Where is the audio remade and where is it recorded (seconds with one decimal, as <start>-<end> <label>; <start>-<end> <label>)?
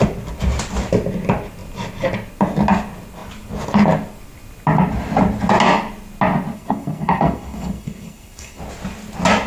0.0-6.5 recorded; 6.5-8.6 remade; 8.6-9.5 recorded